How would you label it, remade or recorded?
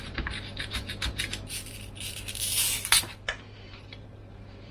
remade